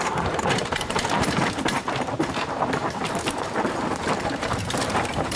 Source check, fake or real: fake